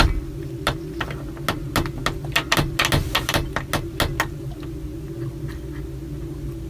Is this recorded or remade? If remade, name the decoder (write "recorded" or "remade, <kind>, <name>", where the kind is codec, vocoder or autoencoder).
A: recorded